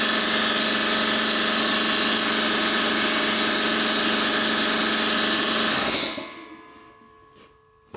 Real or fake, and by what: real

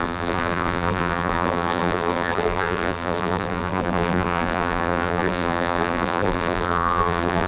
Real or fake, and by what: fake, vocoder, BigVGAN v2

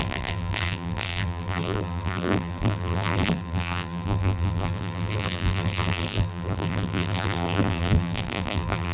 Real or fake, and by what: fake, vocoder, BigVGAN v2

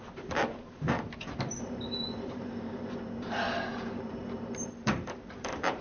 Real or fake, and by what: fake, vocoder, BigVGAN v2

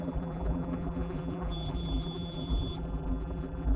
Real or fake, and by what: fake, vocoder, BigVGAN v2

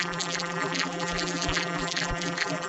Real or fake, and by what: fake, vocoder, BigVGAN v2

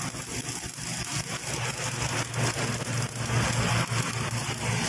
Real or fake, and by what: real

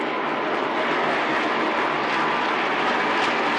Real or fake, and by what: real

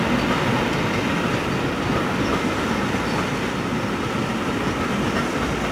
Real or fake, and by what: real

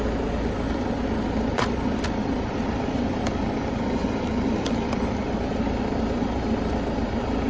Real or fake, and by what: fake, vocoder, BigVGAN v2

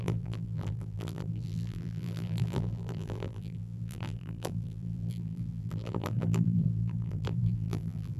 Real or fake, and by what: fake, vocoder, BigVGAN v2